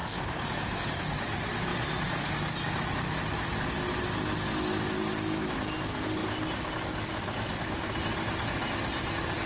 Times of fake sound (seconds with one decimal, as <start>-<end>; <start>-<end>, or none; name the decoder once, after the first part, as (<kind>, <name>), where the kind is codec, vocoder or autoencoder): none